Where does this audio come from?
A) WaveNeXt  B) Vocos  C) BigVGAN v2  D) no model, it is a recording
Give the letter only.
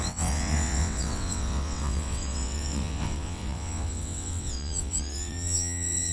A